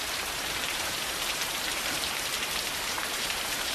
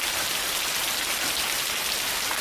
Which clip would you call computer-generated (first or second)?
first